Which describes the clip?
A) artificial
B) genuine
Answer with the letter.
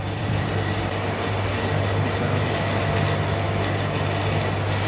B